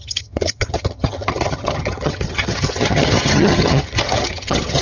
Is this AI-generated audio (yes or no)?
yes